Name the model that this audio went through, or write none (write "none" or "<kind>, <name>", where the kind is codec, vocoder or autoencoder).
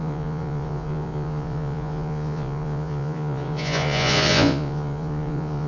vocoder, Vocos